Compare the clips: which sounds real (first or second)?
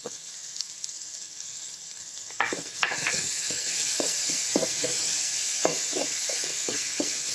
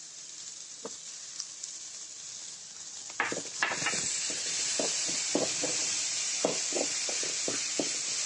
second